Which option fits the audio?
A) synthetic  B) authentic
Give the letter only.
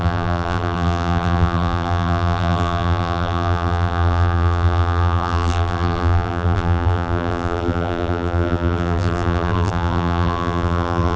A